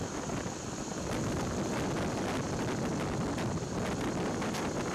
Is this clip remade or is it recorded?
recorded